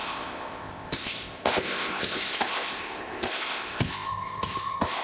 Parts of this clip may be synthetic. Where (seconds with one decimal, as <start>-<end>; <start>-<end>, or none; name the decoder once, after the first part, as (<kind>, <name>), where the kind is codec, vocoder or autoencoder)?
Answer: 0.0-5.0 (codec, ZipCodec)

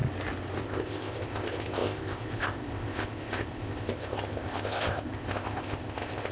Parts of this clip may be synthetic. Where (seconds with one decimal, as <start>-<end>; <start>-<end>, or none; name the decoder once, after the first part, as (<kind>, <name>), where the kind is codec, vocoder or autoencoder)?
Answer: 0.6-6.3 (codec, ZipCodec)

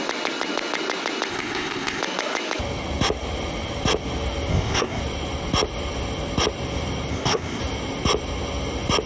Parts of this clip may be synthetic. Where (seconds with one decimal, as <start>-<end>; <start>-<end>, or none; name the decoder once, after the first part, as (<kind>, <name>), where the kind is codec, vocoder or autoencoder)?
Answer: 1.3-2.0 (codec, ZipCodec); 4.5-5.0; 7.1-7.6

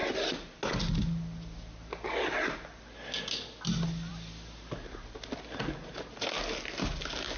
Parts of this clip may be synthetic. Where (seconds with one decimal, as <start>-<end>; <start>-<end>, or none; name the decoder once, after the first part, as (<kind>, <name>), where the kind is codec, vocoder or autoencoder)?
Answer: none